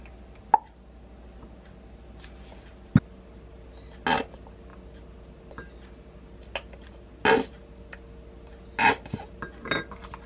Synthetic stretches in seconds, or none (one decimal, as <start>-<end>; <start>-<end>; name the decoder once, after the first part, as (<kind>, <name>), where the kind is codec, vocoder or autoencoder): none